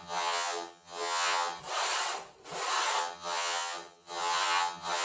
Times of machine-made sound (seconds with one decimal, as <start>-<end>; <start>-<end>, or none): 0.0-1.6; 3.0-5.0